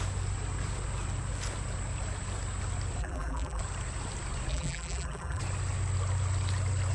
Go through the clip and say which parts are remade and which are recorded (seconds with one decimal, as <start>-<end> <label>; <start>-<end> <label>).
0.0-3.0 recorded; 3.0-3.6 remade; 3.6-4.5 recorded; 4.5-5.4 remade; 5.4-6.9 recorded